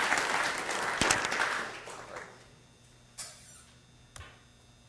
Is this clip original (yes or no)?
yes